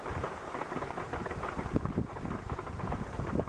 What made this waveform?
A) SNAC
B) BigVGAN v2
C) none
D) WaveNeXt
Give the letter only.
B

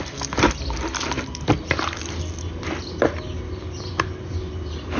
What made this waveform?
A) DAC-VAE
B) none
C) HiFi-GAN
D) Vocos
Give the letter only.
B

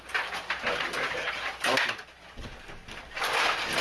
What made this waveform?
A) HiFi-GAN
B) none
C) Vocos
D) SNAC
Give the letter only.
B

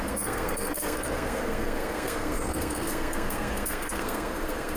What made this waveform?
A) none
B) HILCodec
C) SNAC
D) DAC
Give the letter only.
C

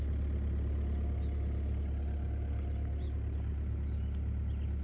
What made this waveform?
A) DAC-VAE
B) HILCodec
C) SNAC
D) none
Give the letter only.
D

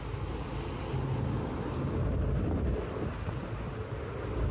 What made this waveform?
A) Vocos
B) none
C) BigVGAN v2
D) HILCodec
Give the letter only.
B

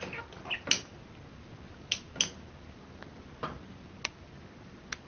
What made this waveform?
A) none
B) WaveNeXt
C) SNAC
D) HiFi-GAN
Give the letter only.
A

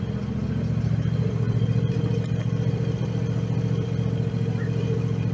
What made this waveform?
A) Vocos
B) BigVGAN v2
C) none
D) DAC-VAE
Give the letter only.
C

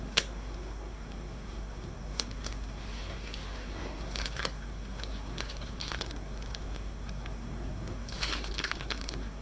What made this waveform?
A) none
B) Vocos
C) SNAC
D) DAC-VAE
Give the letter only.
C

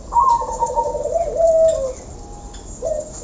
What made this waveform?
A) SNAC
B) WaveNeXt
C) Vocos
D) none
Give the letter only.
D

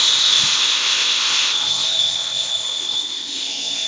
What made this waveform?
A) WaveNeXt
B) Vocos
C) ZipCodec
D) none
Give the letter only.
C